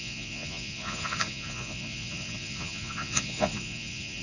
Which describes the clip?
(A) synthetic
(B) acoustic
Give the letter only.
A